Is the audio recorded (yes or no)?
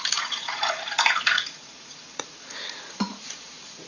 no